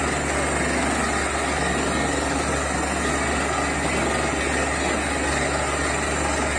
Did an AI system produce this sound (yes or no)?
no